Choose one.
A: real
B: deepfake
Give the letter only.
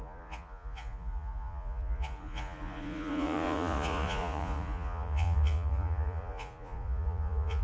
B